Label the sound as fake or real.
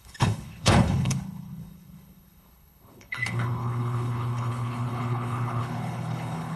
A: fake